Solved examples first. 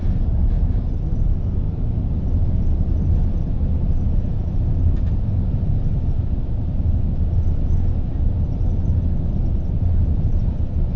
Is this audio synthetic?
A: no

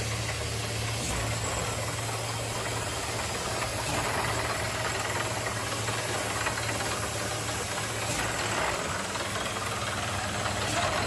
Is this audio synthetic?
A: no